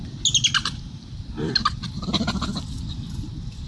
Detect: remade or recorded recorded